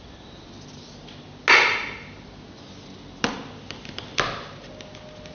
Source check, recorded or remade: recorded